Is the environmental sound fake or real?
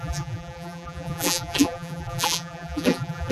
fake